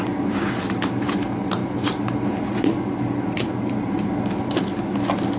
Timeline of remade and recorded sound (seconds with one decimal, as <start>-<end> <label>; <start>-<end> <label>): 0.0-5.4 recorded